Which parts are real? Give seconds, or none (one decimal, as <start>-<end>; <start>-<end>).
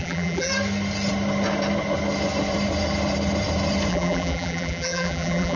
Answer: 0.5-3.9